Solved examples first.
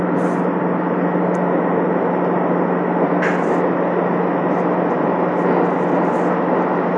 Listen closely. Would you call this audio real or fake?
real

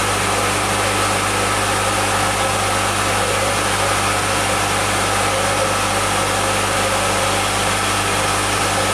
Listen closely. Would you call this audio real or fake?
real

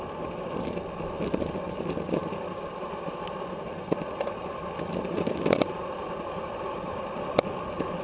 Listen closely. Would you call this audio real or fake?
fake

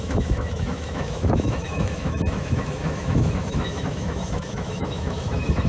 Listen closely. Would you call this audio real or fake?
fake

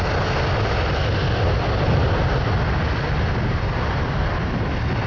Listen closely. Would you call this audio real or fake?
real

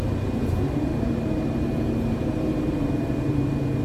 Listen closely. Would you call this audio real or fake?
fake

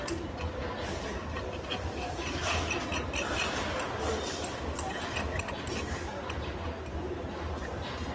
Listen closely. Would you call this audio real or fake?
real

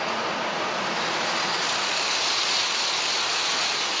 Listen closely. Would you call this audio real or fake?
real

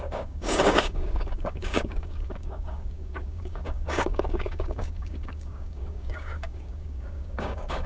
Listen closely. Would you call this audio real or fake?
fake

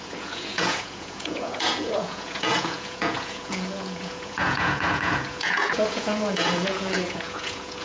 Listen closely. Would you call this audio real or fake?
fake